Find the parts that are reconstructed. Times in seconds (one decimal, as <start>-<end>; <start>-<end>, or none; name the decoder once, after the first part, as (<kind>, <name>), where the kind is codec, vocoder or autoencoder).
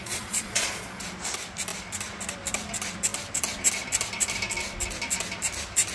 0.0-1.0 (vocoder, Vocos)